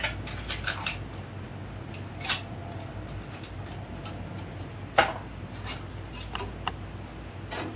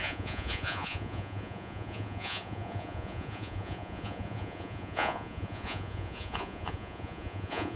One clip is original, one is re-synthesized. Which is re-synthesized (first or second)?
second